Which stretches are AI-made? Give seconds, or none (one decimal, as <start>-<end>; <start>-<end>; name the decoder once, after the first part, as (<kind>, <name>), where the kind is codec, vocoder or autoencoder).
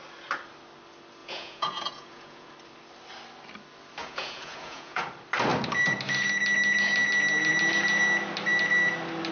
1.2-2.5 (vocoder, Vocos); 4.0-5.0